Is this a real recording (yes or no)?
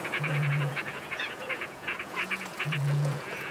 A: no